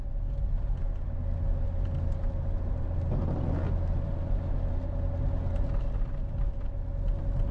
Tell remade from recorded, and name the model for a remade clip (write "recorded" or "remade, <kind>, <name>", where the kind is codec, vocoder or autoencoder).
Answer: recorded